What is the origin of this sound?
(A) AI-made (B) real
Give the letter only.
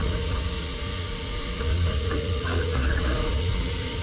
A